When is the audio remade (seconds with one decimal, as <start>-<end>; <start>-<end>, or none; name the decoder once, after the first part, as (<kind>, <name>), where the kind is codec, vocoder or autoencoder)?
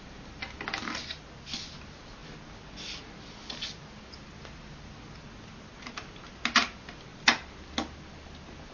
none